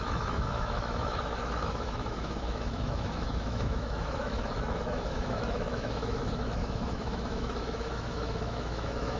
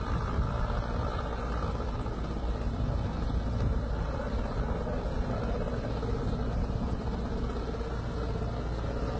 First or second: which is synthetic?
first